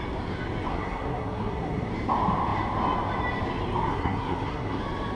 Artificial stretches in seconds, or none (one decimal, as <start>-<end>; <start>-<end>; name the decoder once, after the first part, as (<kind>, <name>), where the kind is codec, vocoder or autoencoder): 0.7-1.9 (codec, SNAC); 3.9-4.8